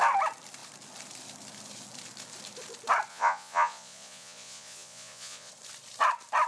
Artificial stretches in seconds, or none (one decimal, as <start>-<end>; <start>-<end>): 3.1-5.5